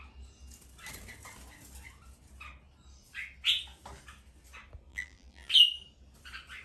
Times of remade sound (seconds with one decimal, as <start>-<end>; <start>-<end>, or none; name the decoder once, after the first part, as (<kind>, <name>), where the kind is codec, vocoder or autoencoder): 4.9-5.5 (vocoder, BigVGAN v2)